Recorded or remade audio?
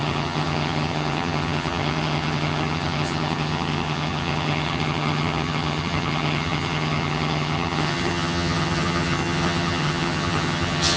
remade